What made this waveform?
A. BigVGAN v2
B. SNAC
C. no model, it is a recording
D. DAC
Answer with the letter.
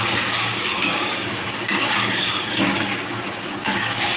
D